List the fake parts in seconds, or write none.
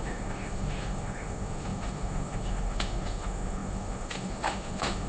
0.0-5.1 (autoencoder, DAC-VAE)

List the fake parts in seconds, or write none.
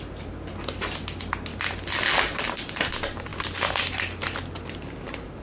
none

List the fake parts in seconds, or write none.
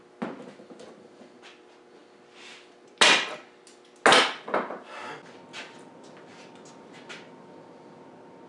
none